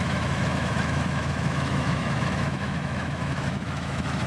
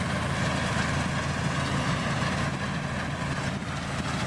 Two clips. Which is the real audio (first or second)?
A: second